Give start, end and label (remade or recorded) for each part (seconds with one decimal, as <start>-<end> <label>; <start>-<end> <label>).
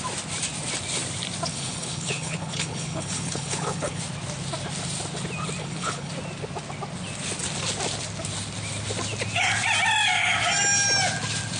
0.0-1.5 recorded; 1.5-4.0 remade; 4.0-5.6 recorded; 5.6-6.1 remade; 6.1-11.6 recorded